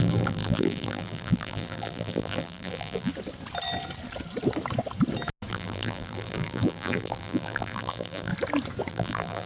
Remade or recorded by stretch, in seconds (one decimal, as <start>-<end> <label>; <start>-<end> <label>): 0.0-3.1 remade; 3.1-5.5 recorded; 5.5-8.3 remade; 8.3-8.9 recorded; 8.9-9.5 remade